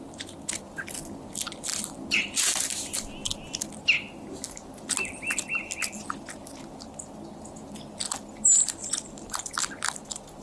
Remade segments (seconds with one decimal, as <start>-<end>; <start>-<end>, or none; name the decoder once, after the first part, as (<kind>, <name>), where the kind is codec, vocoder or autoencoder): none